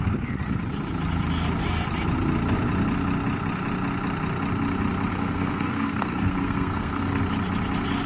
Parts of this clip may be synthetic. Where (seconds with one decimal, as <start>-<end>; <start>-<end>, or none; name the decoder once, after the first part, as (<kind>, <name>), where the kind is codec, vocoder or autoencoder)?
5.1-7.2 (codec, SNAC)

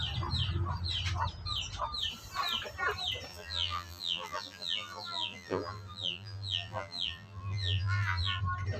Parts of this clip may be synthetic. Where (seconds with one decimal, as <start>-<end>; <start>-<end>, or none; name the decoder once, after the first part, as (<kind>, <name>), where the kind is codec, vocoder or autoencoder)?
3.3-8.4 (vocoder, BigVGAN v2)

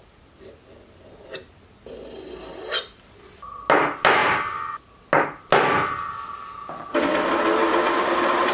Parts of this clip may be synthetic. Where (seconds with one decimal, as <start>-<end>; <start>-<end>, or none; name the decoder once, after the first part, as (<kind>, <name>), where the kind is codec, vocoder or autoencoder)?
7.6-8.5 (vocoder, BigVGAN v2)

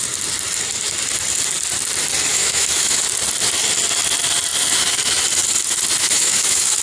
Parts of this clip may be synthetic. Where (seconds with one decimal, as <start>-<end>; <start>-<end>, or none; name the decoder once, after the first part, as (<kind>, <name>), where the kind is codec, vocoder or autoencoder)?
2.3-3.0 (autoencoder, DAC-VAE); 6.0-6.8

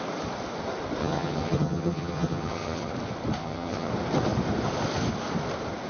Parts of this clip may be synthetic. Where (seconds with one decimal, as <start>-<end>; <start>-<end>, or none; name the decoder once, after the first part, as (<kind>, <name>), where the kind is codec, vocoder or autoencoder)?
1.0-2.9 (vocoder, HiFi-GAN); 3.4-3.9

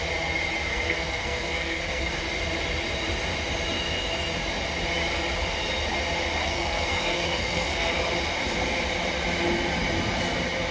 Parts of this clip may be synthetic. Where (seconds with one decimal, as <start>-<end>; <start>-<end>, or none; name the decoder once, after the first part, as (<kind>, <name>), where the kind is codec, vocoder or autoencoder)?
0.7-2.2 (codec, SNAC); 6.4-8.0

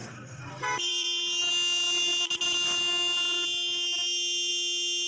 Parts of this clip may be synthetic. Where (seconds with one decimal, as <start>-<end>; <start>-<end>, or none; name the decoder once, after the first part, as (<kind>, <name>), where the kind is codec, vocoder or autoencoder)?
0.0-0.9 (codec, DAC)

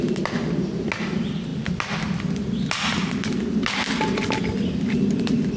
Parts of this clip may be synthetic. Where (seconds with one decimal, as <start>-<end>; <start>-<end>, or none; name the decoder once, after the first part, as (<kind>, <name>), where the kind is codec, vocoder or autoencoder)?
none